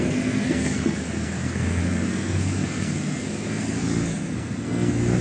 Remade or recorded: remade